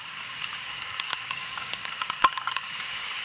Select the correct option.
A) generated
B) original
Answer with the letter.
A